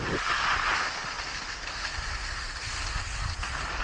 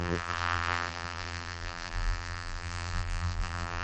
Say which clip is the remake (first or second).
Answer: second